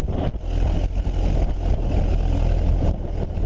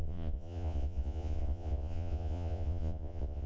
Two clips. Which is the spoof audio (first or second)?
second